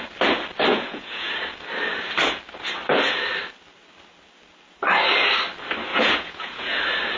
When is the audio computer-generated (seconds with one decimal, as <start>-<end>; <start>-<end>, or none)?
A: 0.7-1.3; 5.9-6.8